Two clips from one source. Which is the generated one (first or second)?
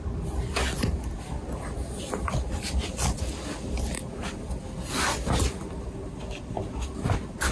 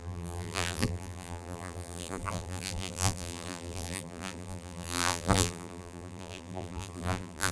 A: second